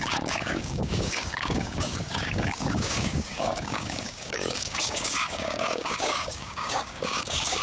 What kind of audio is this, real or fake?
fake